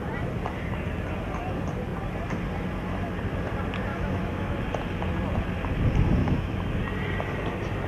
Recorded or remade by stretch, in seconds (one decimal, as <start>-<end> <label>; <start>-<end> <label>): 0.0-3.9 recorded; 3.9-4.5 remade; 4.5-6.2 recorded; 6.2-6.8 remade; 6.8-7.9 recorded

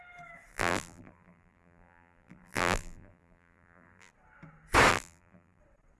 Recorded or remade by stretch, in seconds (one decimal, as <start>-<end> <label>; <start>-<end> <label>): 0.0-0.5 recorded; 0.5-4.1 remade; 4.1-4.9 recorded; 4.9-5.6 remade; 5.6-6.0 recorded

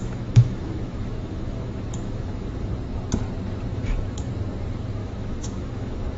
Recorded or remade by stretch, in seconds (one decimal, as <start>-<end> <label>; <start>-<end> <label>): 0.0-2.7 remade; 2.7-3.7 recorded; 3.7-4.3 remade; 4.3-5.0 recorded; 5.0-6.2 remade

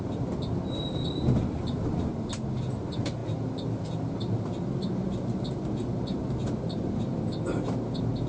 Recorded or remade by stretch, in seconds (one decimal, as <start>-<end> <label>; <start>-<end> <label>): 0.0-8.3 recorded

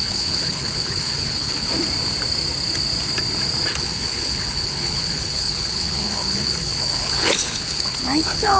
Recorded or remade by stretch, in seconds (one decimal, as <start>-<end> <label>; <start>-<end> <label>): 0.0-1.7 remade; 1.7-3.7 recorded; 3.7-8.6 remade

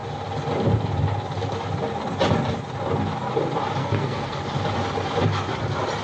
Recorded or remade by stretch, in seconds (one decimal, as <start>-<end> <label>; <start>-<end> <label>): 0.0-3.8 recorded; 3.8-4.4 remade; 4.4-6.0 recorded

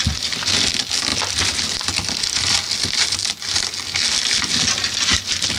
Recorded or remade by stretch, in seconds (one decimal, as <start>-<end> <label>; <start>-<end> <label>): 0.0-5.6 recorded